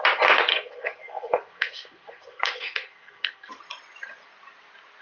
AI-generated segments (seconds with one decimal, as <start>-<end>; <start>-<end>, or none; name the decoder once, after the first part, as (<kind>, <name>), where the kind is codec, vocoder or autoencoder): 0.5-3.5 (codec, SNAC)